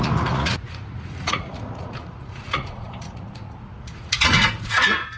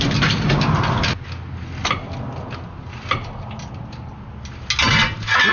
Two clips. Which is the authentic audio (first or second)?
second